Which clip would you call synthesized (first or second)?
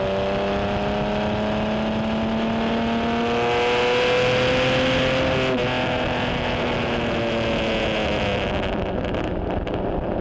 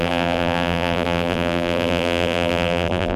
second